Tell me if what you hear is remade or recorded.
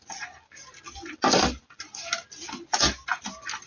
recorded